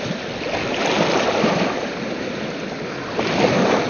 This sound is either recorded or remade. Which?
recorded